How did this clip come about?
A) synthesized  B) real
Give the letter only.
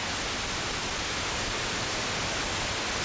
B